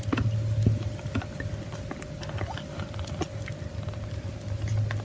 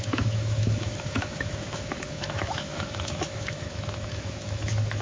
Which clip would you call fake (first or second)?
second